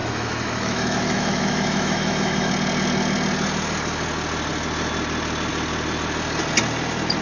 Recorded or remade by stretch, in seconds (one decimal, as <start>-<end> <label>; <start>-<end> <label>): 0.0-2.5 remade; 2.5-7.2 recorded